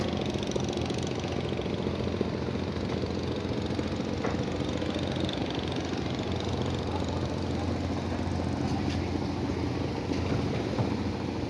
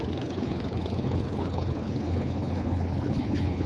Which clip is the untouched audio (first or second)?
first